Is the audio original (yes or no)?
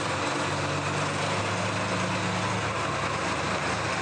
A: yes